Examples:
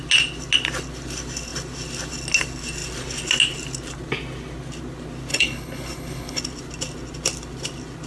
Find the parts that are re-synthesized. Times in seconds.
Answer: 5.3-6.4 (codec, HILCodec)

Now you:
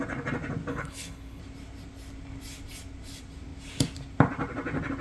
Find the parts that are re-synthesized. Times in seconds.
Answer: 0.7-1.4 (codec, HILCodec)

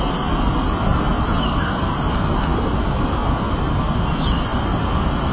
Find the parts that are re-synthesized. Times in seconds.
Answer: none

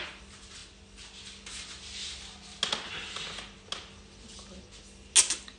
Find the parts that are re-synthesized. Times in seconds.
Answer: none

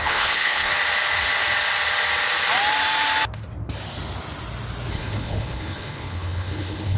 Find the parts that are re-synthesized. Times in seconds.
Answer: 0.0-0.7 (codec, HILCodec); 4.9-7.0

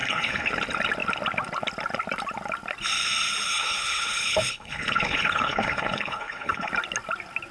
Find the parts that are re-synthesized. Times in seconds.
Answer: 0.0-0.5 (codec, HILCodec); 3.5-6.7

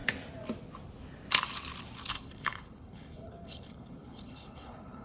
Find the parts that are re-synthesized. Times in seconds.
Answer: 2.1-5.0 (codec, HILCodec)